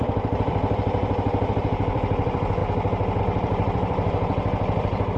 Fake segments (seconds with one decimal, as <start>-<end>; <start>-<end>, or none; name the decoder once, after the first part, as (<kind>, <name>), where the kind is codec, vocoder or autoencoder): 0.0-1.0 (vocoder, BigVGAN v2); 1.5-2.6; 3.2-5.2